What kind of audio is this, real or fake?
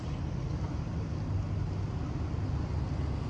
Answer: real